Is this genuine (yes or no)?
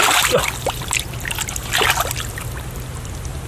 yes